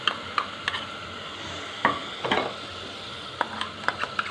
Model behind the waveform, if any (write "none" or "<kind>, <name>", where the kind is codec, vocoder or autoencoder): none